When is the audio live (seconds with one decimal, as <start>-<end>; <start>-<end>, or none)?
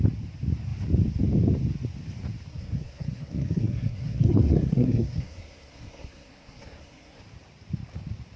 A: 0.0-2.5; 7.2-8.4